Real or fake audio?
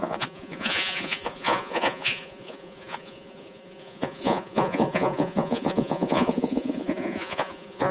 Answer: fake